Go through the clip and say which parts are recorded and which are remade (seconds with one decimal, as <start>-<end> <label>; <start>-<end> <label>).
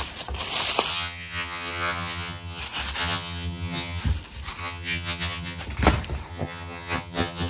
0.0-0.9 recorded; 0.9-2.6 remade; 2.6-3.0 recorded; 3.0-4.0 remade; 4.0-4.6 recorded; 4.6-5.6 remade; 5.6-6.3 recorded; 6.3-7.5 remade